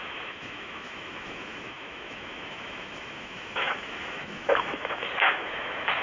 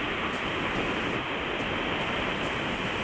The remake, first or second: first